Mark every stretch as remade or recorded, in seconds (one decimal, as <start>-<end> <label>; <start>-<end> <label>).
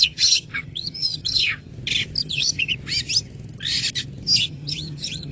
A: 0.0-1.7 remade; 1.7-2.2 recorded; 2.2-2.7 remade; 2.7-4.4 recorded; 4.4-5.3 remade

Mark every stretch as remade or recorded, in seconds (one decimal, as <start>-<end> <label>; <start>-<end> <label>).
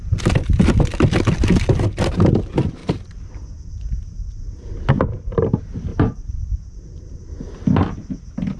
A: 0.0-2.8 recorded; 2.8-3.3 remade; 3.3-8.6 recorded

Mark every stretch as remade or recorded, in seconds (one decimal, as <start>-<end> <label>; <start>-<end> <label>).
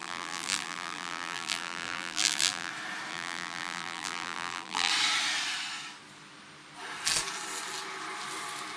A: 0.0-2.7 remade; 2.7-3.1 recorded; 3.1-4.9 remade; 4.9-8.8 recorded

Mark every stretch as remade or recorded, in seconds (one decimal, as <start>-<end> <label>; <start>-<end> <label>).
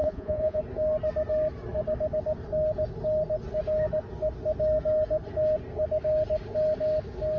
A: 0.0-0.6 remade; 0.6-7.4 recorded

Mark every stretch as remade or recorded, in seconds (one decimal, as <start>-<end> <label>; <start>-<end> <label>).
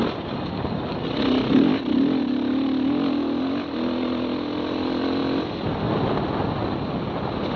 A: 0.0-7.6 recorded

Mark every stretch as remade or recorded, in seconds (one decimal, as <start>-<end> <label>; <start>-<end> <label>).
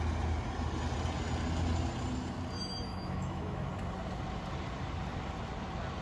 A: 0.0-2.9 recorded; 2.9-3.7 remade; 3.7-6.0 recorded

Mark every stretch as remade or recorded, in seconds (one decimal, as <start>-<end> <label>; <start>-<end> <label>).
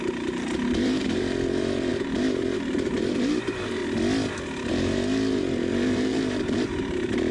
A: 0.0-3.8 remade; 3.8-4.7 recorded; 4.7-7.3 remade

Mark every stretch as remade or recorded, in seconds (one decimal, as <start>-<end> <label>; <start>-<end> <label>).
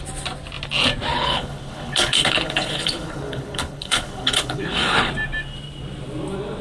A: 0.0-1.1 recorded; 1.1-5.1 remade; 5.1-6.6 recorded